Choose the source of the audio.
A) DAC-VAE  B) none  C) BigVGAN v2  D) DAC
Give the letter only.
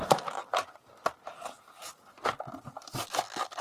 C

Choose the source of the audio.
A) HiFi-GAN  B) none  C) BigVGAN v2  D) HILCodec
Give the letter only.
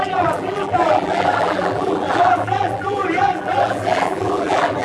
C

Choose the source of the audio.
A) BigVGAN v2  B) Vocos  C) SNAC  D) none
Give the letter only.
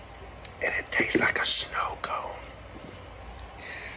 D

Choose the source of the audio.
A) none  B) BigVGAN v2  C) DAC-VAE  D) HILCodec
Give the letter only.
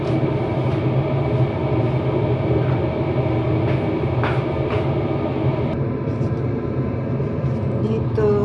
A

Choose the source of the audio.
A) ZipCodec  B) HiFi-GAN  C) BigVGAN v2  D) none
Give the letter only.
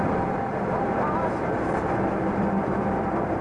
C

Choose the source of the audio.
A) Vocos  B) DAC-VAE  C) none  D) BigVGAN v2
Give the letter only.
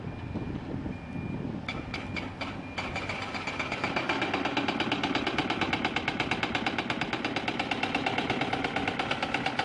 C